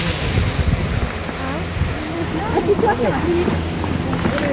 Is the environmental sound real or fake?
real